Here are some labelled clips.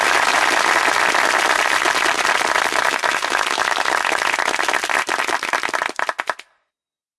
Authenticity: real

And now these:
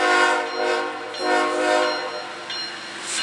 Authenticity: real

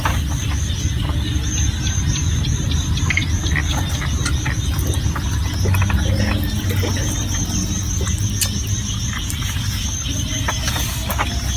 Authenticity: real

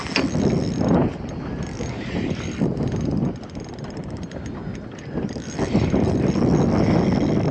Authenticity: real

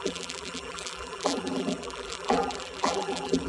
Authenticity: fake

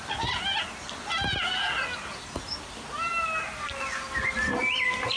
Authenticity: real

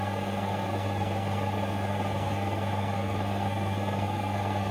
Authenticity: fake